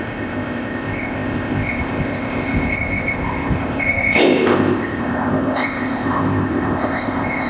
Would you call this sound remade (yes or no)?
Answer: yes